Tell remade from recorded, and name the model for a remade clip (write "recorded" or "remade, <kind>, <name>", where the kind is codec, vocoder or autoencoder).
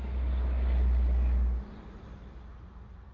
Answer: recorded